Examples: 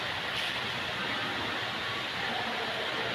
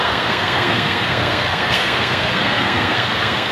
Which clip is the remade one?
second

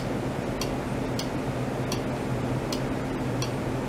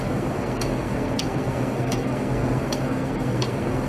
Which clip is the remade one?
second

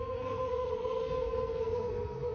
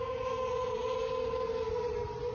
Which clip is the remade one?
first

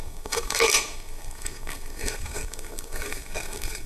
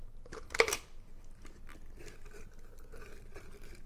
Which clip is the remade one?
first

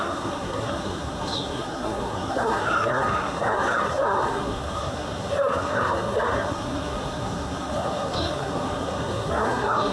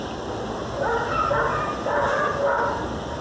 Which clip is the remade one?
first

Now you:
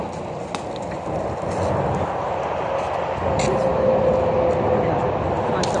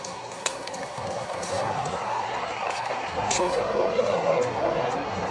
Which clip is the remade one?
second